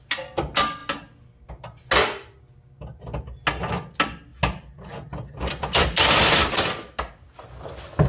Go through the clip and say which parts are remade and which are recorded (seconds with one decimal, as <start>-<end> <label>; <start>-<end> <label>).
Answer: 0.0-8.1 recorded